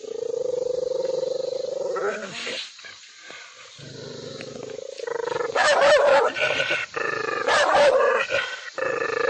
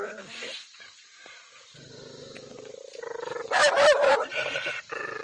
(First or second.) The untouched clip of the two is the first